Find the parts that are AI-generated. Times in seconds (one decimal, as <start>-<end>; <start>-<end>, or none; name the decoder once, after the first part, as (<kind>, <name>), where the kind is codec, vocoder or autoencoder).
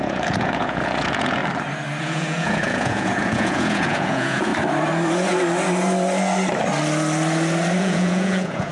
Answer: 0.0-1.4 (vocoder, Vocos); 2.0-4.5; 7.8-8.7